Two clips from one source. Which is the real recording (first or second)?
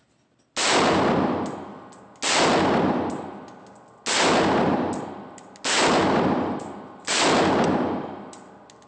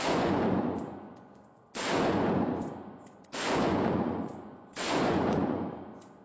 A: first